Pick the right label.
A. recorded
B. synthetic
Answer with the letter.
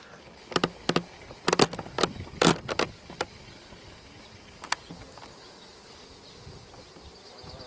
A